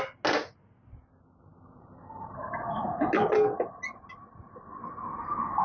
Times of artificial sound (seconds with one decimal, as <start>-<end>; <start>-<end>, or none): none